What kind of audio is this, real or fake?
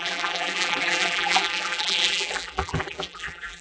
fake